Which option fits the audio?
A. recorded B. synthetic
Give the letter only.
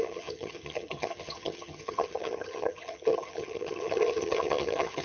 B